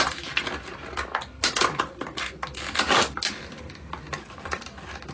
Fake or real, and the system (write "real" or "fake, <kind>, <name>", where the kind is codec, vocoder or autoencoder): real